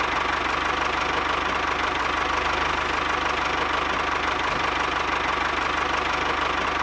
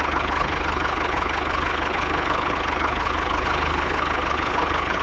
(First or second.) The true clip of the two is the first